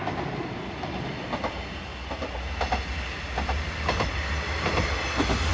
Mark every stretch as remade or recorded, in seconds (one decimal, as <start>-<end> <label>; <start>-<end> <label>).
0.0-5.5 recorded